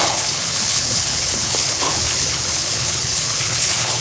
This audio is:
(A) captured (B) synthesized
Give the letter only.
B